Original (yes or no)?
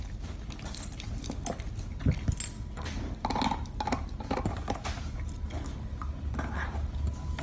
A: yes